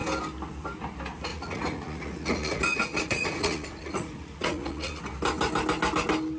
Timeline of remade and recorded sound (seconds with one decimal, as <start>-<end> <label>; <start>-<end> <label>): 0.0-1.3 recorded; 1.3-5.0 remade; 5.0-6.4 recorded